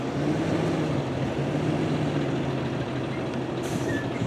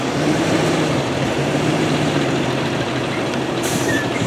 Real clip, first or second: first